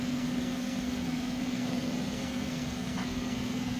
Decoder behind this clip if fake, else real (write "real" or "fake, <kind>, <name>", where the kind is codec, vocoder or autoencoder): fake, codec, SNAC